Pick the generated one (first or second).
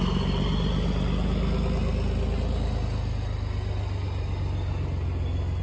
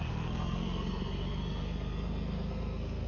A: second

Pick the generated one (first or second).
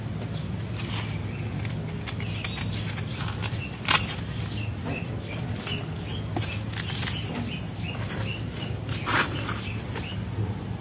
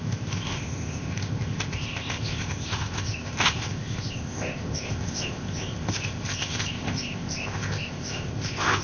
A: second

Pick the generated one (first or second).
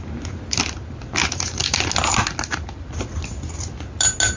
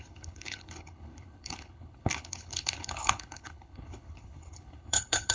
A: second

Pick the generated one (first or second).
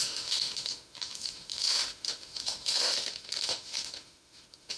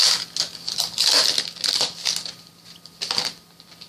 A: first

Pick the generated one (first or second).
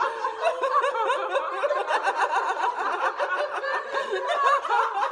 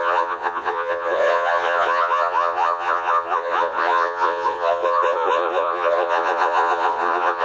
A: second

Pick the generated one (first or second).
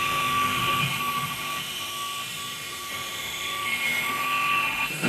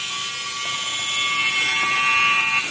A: first